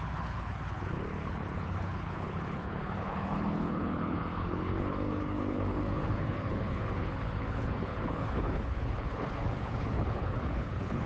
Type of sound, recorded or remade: remade